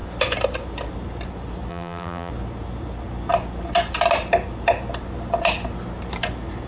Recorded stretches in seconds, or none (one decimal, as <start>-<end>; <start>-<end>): 0.0-1.7; 2.3-6.7